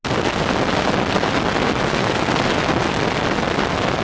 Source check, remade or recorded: recorded